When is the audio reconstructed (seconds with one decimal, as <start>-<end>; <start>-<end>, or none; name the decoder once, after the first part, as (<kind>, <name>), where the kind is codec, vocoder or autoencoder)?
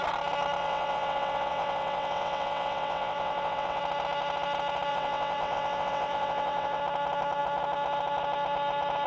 0.6-3.8 (vocoder, WaveNeXt); 4.9-6.8